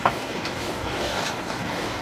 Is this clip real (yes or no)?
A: no